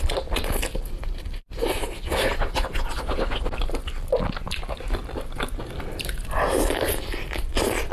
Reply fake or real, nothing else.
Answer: real